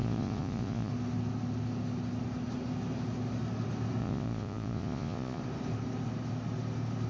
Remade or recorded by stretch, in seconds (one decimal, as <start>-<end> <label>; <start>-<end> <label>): 0.0-0.9 remade; 0.9-4.0 recorded; 4.0-5.4 remade; 5.4-7.1 recorded